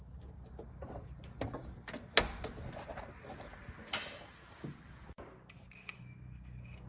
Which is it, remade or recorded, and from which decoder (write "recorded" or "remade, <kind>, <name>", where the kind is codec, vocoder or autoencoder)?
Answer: recorded